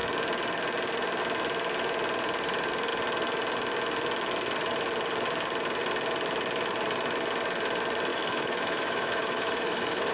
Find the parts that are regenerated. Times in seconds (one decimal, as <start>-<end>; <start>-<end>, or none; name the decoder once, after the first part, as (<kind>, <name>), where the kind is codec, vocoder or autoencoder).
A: 8.1-10.1 (autoencoder, DAC-VAE)

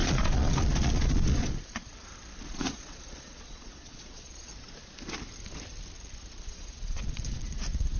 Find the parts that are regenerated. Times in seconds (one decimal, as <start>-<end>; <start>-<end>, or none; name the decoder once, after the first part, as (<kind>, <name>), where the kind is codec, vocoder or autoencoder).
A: 0.0-1.9 (vocoder, Vocos); 2.5-4.5; 6.5-8.0

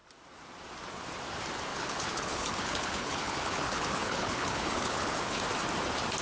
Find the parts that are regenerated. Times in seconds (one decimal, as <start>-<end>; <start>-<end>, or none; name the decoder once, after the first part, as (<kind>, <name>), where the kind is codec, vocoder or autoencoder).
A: 1.7-5.4 (codec, HILCodec)

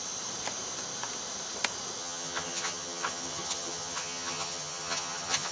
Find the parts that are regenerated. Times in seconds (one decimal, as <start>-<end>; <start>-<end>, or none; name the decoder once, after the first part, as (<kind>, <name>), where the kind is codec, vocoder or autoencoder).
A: 2.0-5.5 (vocoder, HiFi-GAN)

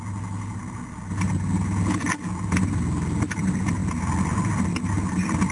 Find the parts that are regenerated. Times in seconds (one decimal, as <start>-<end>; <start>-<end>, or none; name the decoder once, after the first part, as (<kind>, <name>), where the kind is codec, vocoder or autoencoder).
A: none

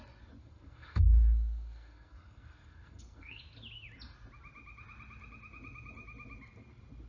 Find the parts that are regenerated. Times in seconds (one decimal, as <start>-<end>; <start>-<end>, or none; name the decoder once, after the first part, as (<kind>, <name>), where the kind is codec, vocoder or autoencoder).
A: 0.4-3.4 (codec, SNAC)